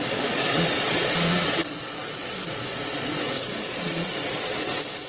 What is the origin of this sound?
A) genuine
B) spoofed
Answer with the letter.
B